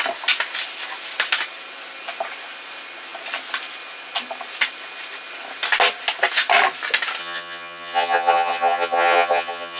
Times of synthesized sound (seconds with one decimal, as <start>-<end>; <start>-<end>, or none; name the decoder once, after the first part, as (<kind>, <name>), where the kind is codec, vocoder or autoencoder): 7.2-9.8 (vocoder, HiFi-GAN)